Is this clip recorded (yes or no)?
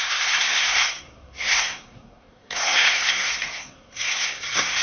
no